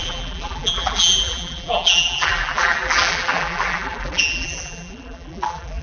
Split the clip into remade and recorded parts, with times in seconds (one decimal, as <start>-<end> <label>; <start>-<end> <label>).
0.0-5.8 remade

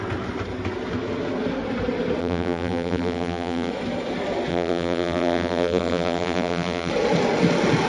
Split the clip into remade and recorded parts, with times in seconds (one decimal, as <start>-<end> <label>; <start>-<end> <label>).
0.0-2.2 recorded; 2.2-3.7 remade; 3.7-4.5 recorded; 4.5-6.9 remade; 6.9-7.9 recorded

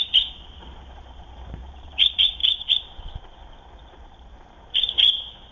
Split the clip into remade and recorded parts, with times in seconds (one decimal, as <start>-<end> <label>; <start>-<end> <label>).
0.0-5.5 remade

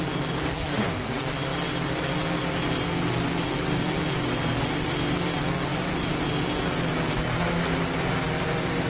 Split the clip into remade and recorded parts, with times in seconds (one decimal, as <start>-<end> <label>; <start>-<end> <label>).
0.0-8.9 recorded

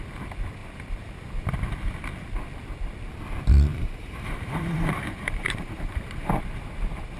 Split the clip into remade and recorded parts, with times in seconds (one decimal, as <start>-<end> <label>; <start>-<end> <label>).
0.0-3.7 recorded; 3.7-6.3 remade; 6.3-7.2 recorded

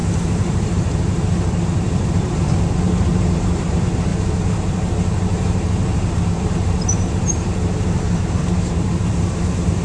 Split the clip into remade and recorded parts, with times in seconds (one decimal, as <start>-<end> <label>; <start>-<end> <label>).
0.0-9.8 remade

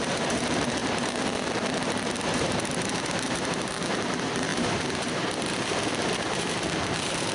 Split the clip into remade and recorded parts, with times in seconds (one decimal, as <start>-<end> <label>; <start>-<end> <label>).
0.0-7.3 remade

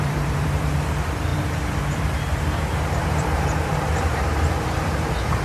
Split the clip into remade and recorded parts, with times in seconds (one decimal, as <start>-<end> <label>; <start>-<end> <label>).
0.0-5.4 remade